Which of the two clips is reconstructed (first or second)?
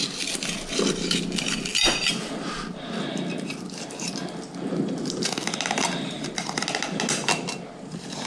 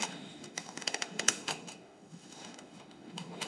second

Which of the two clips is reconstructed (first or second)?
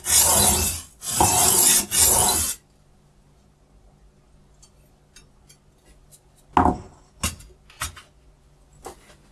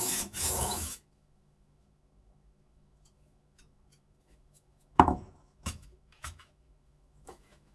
second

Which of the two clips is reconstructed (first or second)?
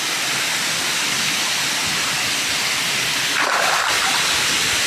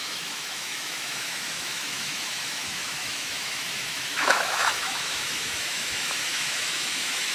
second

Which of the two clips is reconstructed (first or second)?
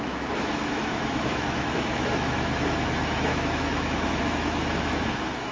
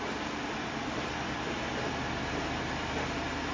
first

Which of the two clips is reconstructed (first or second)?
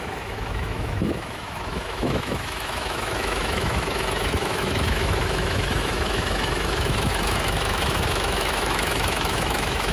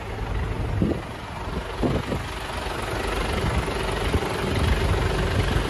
first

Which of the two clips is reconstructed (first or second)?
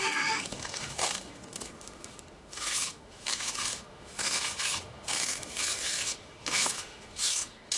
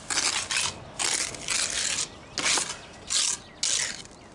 first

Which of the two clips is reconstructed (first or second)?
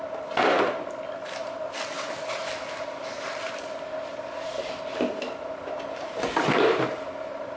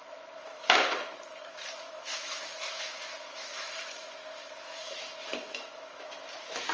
second